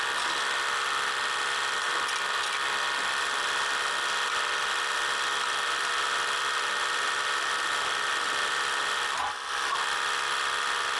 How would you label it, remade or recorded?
recorded